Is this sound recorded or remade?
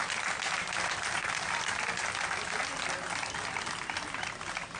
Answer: recorded